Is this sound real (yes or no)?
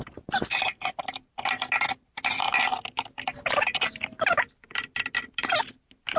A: yes